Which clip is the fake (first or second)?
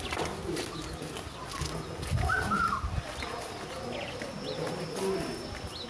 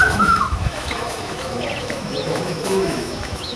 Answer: second